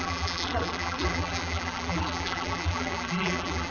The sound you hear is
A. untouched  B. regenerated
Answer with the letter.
B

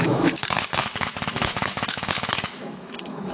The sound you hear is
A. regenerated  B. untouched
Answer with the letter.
A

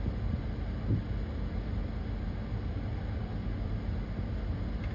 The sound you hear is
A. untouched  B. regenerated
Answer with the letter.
A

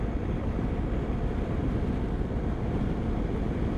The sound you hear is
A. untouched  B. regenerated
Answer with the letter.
A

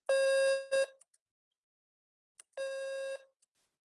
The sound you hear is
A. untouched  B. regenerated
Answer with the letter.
A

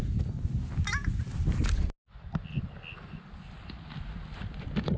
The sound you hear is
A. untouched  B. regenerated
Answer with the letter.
A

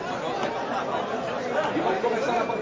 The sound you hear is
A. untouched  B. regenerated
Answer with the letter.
A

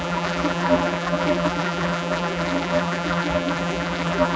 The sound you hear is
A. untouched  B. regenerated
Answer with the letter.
B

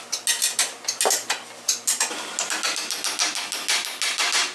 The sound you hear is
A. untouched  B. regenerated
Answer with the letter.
A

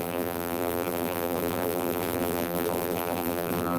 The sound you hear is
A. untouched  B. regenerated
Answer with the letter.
B